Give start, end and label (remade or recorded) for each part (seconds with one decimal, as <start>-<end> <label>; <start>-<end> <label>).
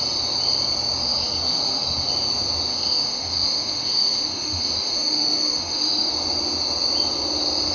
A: 0.0-1.0 recorded; 1.0-2.1 remade; 2.1-2.7 recorded; 2.7-6.1 remade; 6.1-7.7 recorded